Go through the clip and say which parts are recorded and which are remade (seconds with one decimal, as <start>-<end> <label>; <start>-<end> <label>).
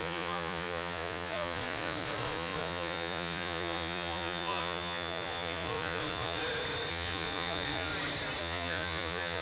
0.0-6.4 remade; 6.4-6.9 recorded; 6.9-7.9 remade; 7.9-8.4 recorded; 8.4-9.4 remade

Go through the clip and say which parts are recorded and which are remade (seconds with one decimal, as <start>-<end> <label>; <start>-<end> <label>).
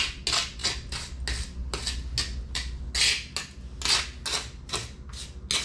0.0-5.6 recorded